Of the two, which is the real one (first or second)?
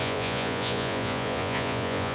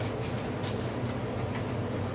second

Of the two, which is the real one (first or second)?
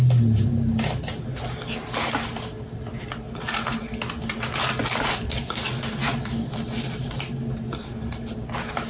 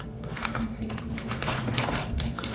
first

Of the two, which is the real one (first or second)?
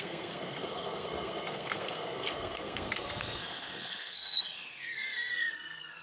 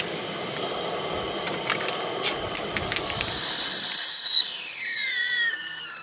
second